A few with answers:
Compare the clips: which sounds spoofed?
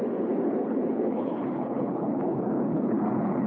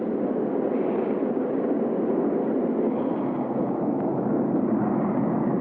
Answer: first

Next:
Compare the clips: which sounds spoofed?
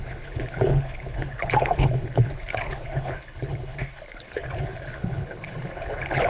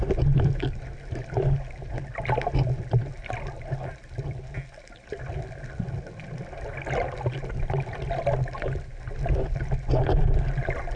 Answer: first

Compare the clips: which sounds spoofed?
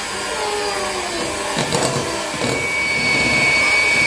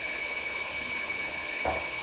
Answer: second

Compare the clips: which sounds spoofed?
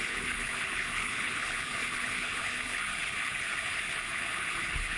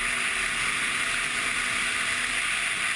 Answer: first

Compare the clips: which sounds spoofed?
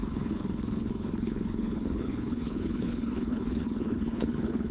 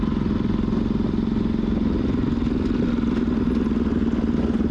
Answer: first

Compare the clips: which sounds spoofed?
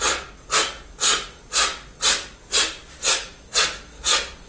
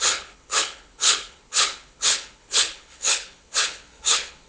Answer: second